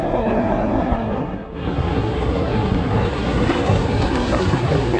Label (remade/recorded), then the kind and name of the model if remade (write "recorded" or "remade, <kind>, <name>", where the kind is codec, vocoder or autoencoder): remade, codec, SNAC